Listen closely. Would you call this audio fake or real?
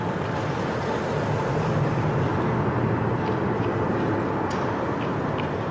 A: real